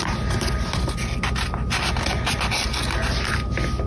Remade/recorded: recorded